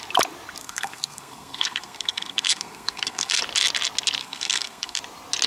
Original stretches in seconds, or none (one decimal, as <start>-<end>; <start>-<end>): 0.0-0.6; 3.4-4.2; 5.0-5.5